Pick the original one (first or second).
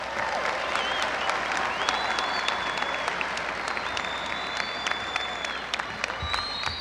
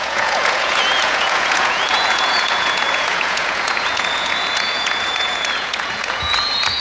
first